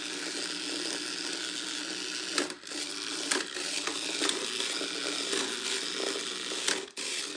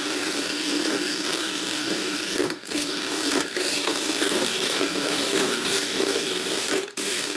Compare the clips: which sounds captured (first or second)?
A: first